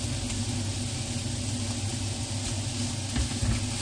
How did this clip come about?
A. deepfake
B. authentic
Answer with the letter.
B